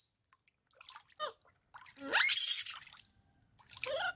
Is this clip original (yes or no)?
yes